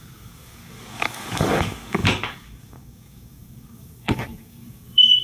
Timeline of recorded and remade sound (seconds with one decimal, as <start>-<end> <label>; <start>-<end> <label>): 0.0-5.2 remade